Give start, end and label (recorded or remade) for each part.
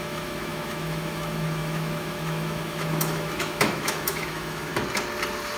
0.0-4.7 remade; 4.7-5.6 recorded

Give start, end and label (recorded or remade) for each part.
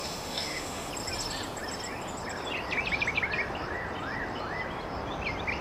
0.0-0.9 remade; 0.9-5.6 recorded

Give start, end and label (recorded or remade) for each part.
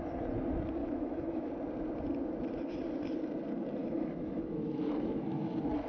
0.0-0.8 recorded; 0.8-1.5 remade; 1.5-3.8 recorded; 3.8-5.5 remade; 5.5-5.9 recorded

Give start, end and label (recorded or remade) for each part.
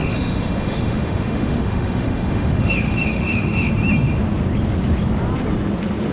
0.0-3.7 remade; 3.7-6.1 recorded